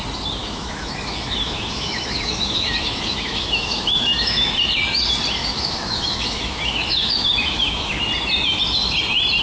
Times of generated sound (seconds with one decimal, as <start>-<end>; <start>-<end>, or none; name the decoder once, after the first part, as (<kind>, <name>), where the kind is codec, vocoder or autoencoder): 0.4-4.5 (autoencoder, DAC-VAE); 5.4-8.0